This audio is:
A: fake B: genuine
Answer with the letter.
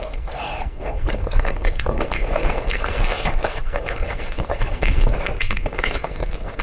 A